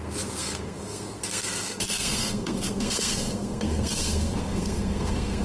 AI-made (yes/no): yes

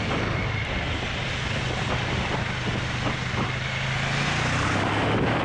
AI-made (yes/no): no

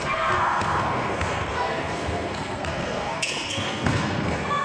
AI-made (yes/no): yes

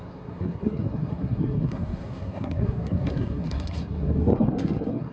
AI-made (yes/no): yes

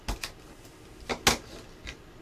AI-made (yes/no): no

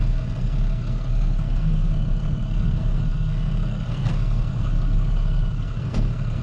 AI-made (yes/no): yes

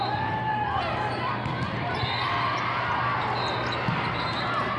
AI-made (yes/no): no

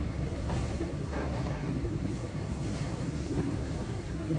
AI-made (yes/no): yes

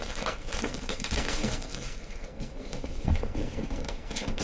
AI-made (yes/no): yes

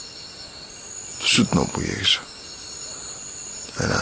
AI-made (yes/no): no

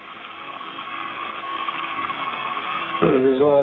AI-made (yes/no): yes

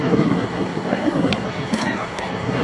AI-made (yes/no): yes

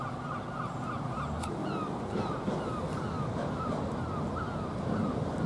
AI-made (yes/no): no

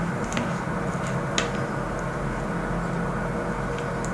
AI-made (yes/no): no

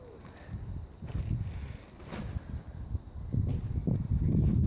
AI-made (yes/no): no